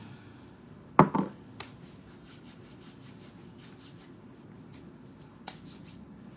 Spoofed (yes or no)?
no